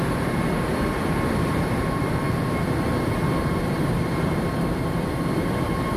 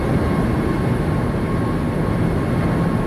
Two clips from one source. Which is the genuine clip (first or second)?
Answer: second